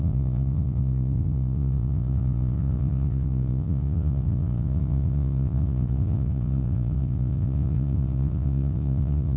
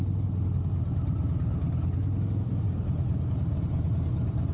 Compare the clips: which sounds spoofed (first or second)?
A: first